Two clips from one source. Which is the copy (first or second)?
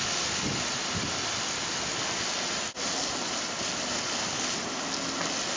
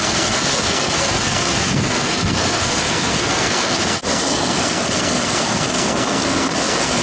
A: second